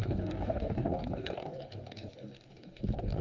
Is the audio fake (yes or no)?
yes